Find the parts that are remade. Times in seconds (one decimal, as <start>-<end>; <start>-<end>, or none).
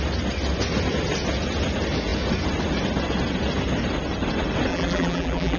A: 4.7-5.6